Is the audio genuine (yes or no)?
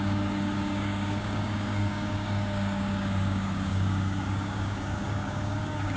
no